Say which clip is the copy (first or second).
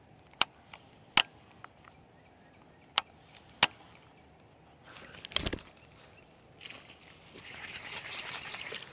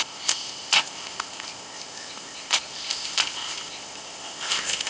second